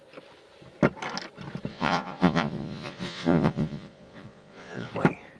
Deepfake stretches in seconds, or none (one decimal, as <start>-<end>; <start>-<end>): 1.7-4.9